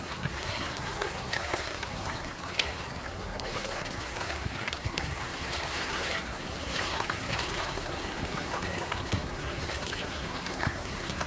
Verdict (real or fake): fake